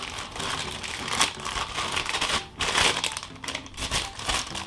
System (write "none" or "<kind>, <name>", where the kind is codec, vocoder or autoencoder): none